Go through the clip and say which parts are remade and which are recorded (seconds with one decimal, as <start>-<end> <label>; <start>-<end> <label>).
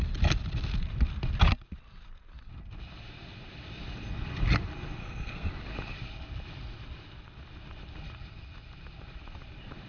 0.0-5.0 recorded; 5.0-5.5 remade; 5.5-9.9 recorded